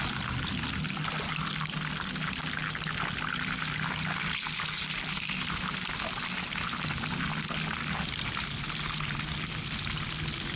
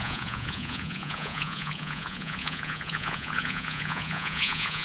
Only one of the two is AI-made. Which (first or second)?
second